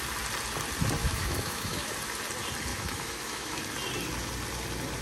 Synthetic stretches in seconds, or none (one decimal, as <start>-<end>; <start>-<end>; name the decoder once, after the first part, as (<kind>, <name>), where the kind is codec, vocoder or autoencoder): 1.0-1.9 (autoencoder, DAC-VAE); 2.7-3.6